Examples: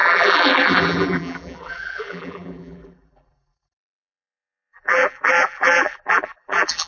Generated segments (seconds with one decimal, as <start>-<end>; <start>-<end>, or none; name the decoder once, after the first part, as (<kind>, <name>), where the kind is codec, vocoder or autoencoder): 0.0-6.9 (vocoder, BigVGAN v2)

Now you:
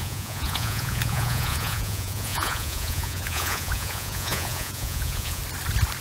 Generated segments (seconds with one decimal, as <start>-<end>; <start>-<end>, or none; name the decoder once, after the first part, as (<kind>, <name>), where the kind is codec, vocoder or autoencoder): 0.0-5.4 (vocoder, Vocos)

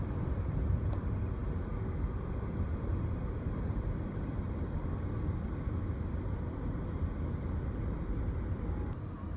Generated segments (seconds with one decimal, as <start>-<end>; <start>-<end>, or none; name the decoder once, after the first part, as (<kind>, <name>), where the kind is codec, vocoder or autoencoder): none

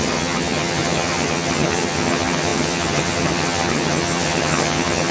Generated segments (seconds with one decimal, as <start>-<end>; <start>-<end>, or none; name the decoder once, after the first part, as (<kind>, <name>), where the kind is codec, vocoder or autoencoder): 0.0-5.1 (vocoder, HiFi-GAN)

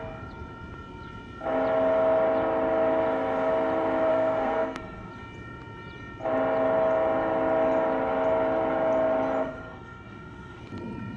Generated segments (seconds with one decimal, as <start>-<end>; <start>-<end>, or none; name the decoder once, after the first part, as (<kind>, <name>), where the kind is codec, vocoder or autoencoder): 4.1-5.1 (codec, SNAC); 9.4-10.6

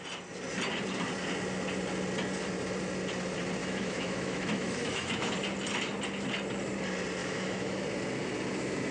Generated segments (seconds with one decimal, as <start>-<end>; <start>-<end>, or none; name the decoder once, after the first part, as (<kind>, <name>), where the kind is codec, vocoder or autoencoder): 3.6-5.3 (autoencoder, DAC-VAE); 7.2-7.8